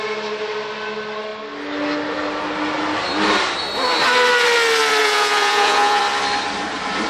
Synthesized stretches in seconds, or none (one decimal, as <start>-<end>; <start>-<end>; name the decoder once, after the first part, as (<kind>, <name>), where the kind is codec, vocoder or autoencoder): 5.0-6.0 (vocoder, Vocos)